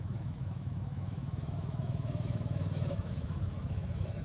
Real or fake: fake